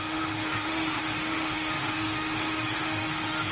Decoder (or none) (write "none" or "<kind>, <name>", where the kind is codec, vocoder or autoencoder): autoencoder, DAC-VAE